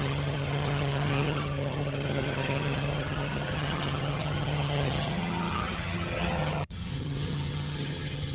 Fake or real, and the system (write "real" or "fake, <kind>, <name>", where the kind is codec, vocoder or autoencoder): fake, vocoder, HiFi-GAN